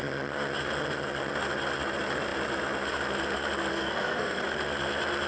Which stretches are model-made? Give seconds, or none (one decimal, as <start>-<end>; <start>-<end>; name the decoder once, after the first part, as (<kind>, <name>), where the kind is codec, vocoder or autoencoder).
3.7-4.4 (codec, SNAC)